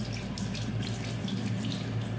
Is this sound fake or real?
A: real